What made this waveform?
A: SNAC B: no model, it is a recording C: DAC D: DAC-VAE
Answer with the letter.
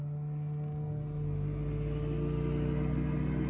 B